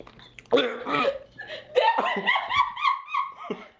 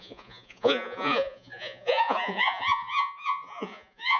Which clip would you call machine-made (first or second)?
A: second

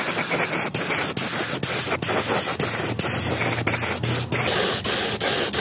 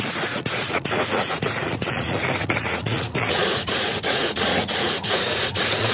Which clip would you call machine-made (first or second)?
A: second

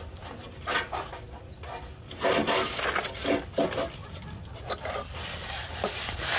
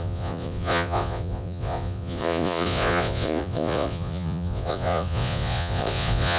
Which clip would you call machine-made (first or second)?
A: second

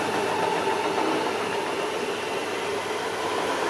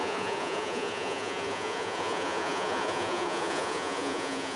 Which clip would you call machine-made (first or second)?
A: second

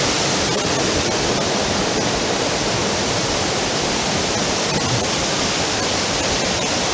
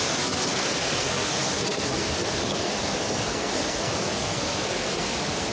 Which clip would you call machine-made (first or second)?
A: second